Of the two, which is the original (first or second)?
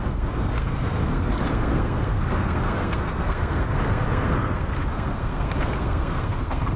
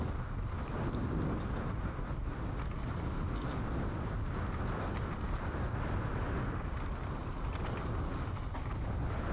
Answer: second